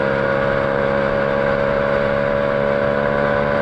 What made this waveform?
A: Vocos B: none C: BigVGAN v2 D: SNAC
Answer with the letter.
B